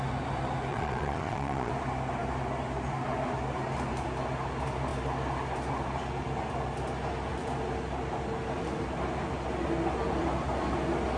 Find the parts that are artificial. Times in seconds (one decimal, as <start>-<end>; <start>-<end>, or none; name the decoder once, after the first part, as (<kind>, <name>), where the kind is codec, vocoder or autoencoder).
0.7-1.7 (vocoder, Vocos)